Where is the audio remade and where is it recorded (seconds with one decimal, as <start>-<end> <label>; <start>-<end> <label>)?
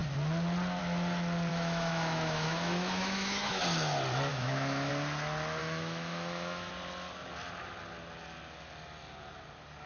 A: 0.0-1.5 recorded; 1.5-3.6 remade; 3.6-4.3 recorded; 4.3-4.9 remade; 4.9-5.6 recorded; 5.6-6.7 remade; 6.7-9.9 recorded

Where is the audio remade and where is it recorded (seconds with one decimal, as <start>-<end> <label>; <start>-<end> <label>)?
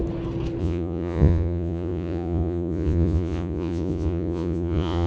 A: 0.0-0.6 recorded; 0.6-5.1 remade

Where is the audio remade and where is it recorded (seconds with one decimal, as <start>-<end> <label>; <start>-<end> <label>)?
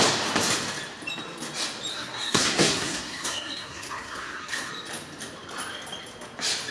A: 0.0-1.9 recorded; 1.9-4.7 remade; 4.7-6.7 recorded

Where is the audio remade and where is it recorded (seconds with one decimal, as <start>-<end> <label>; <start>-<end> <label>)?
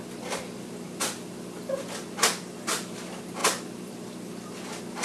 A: 0.0-5.0 recorded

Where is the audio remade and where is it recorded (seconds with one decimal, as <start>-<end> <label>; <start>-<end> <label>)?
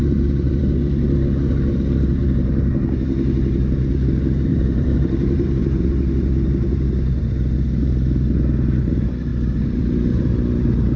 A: 0.0-4.5 recorded; 4.5-5.9 remade; 5.9-11.0 recorded